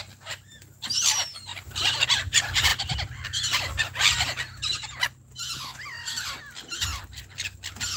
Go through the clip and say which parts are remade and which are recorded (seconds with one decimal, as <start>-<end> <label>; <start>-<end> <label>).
0.0-8.0 recorded